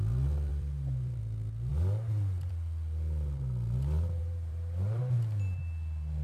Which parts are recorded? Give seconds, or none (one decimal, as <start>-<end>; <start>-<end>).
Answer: 0.0-0.5; 1.2-4.2; 5.0-6.2